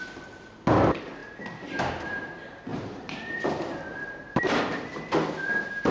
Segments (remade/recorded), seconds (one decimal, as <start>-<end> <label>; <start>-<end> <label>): 0.0-2.7 recorded; 2.7-3.3 remade; 3.3-4.0 recorded; 4.0-4.6 remade; 4.6-5.9 recorded